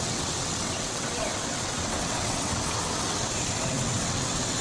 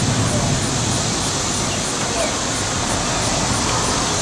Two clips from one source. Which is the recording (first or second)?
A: second